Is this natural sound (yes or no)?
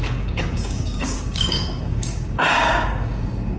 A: no